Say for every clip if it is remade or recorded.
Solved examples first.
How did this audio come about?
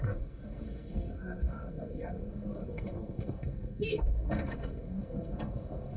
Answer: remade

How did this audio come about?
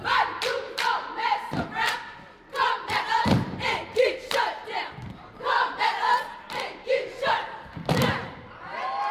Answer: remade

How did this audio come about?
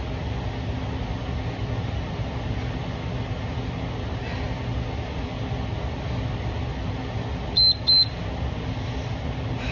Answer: recorded